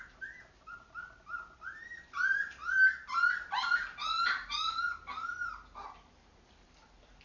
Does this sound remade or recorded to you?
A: recorded